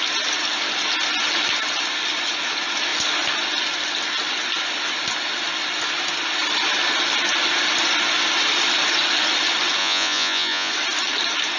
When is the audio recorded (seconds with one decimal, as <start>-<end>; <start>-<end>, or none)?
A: 0.0-9.8; 10.7-11.6